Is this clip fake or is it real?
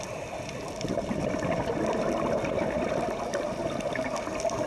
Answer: fake